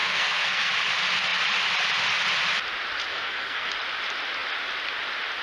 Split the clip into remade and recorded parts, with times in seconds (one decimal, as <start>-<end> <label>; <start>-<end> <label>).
0.0-0.7 remade; 0.7-3.1 recorded; 3.1-3.7 remade; 3.7-5.4 recorded